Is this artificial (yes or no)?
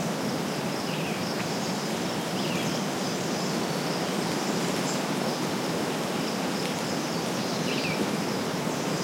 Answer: no